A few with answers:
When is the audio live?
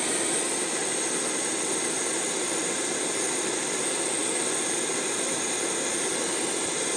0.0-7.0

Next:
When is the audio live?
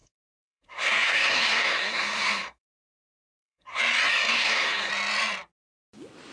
3.8-4.3; 4.9-6.3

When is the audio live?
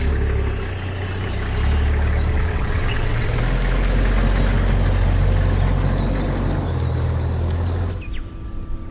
0.0-2.3; 3.4-8.9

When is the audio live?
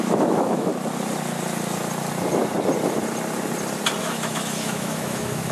0.7-4.0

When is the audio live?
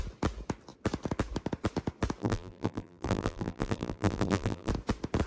0.0-2.2; 4.7-5.3